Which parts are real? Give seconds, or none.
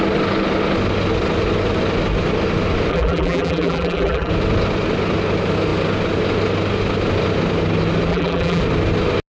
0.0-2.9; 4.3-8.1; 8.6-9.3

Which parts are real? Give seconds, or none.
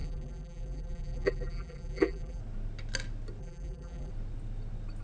2.4-3.4; 4.1-5.0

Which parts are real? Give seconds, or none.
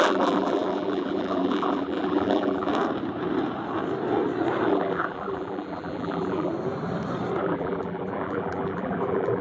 2.7-4.7; 6.5-7.4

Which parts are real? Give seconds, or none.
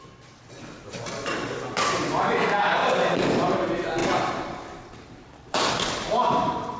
0.0-2.8; 3.4-4.0; 5.7-6.8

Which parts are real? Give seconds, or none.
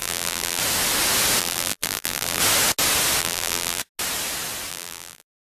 0.6-1.4; 2.4-3.2; 3.8-4.7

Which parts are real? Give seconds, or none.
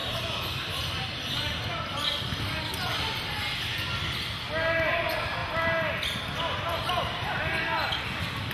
0.0-8.5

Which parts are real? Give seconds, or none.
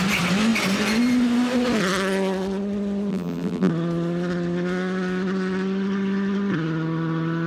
0.0-3.1; 3.7-7.5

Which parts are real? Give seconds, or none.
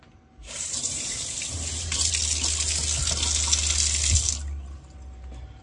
0.0-0.4; 2.1-5.6